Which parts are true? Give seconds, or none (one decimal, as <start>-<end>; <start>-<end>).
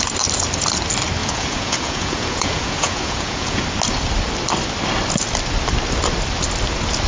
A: 0.0-1.2; 3.6-7.1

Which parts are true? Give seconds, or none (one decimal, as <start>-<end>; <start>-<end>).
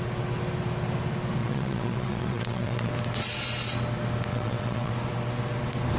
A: 0.0-1.4; 2.9-4.3; 4.9-6.0